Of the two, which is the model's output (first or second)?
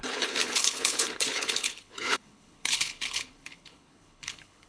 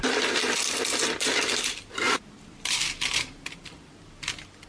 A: first